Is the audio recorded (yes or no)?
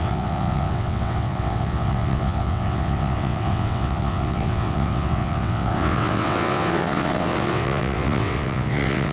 no